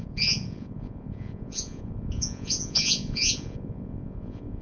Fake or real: fake